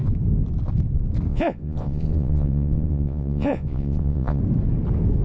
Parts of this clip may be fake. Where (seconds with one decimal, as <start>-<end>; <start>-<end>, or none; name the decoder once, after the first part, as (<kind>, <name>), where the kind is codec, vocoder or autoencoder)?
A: 1.3-4.4 (vocoder, Vocos)

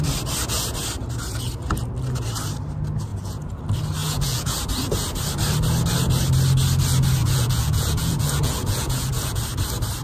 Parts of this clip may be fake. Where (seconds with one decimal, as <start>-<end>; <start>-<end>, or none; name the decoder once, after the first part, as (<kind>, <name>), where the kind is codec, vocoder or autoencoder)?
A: 3.1-3.6 (vocoder, Vocos); 4.0-4.6; 7.2-9.4

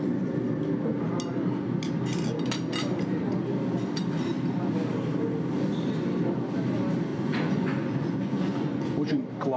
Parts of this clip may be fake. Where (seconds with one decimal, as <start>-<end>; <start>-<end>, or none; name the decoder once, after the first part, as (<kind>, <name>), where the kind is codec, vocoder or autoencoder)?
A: 7.1-9.1 (vocoder, Vocos)

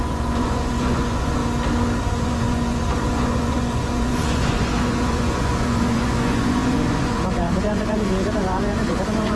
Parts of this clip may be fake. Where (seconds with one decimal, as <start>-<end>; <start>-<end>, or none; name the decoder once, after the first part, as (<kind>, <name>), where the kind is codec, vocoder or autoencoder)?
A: 0.0-1.4 (vocoder, Vocos); 2.0-9.4

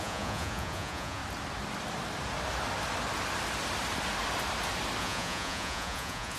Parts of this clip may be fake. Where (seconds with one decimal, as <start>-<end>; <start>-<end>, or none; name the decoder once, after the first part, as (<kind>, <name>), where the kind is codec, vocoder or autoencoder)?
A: 0.0-1.2 (vocoder, Vocos); 5.0-6.4

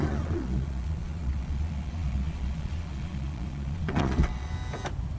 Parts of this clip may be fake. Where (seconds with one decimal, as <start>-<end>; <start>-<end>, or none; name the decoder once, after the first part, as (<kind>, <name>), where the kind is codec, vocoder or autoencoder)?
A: 0.0-4.5 (vocoder, Vocos)

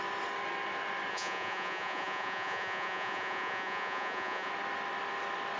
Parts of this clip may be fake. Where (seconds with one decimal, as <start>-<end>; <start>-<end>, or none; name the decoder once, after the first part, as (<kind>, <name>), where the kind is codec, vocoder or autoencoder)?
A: 1.1-4.5 (vocoder, Vocos)

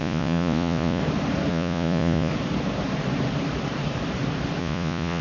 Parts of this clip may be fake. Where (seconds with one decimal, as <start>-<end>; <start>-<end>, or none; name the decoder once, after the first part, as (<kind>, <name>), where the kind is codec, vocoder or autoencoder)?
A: 0.0-1.0 (vocoder, Vocos); 1.5-2.3; 4.6-5.2